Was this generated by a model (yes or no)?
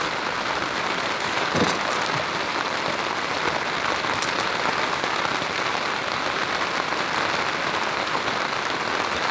no